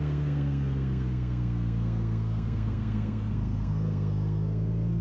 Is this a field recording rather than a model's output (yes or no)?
no